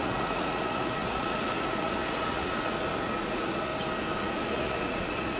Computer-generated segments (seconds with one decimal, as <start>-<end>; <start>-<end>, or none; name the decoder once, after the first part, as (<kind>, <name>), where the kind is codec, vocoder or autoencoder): 0.0-3.7 (vocoder, Vocos); 4.2-5.4